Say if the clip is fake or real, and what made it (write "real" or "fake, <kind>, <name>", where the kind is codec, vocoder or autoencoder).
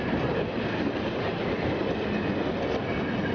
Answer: real